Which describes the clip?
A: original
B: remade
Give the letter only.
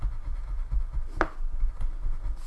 A